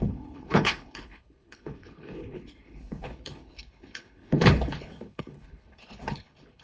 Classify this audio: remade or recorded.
remade